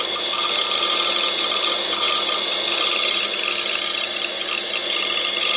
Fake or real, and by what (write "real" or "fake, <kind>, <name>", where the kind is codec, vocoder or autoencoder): real